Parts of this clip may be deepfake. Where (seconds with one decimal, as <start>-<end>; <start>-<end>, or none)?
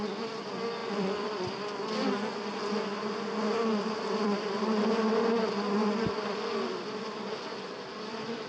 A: 0.8-2.4; 3.7-7.5